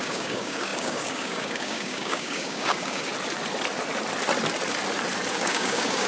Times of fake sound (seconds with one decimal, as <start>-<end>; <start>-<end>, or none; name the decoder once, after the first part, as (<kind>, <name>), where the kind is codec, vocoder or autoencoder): 0.0-3.1 (codec, DAC); 5.3-6.1

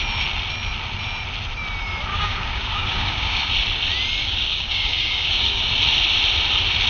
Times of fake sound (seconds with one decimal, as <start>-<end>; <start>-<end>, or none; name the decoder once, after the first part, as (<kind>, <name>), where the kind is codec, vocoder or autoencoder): 2.1-3.5 (codec, DAC); 4.2-5.6

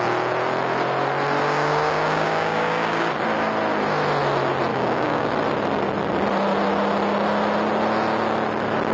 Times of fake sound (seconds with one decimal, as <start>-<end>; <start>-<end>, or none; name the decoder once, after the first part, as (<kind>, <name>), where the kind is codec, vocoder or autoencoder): 1.4-3.1 (codec, DAC); 4.7-5.3

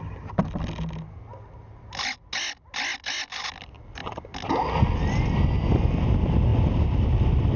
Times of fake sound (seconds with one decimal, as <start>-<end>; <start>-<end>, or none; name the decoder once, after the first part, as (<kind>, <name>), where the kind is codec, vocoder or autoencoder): none

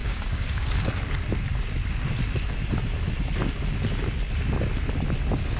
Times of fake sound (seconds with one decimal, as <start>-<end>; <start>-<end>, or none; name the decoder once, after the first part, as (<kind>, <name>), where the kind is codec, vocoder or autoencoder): 0.0-0.9 (codec, DAC)

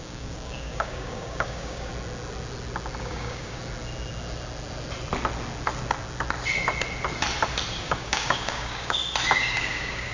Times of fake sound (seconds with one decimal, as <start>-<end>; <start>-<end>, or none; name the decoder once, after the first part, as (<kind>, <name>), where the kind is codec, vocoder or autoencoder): 0.0-1.9 (codec, DAC); 3.0-3.6; 7.8-9.0; 9.5-10.1

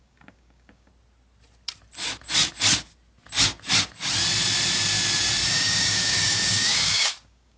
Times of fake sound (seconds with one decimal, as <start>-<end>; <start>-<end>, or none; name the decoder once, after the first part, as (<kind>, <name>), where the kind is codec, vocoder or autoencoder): 0.0-0.9 (codec, DAC); 5.5-7.6